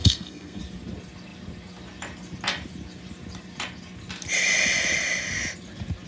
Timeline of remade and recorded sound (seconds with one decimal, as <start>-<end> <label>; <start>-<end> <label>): 0.0-0.6 remade; 0.6-6.1 recorded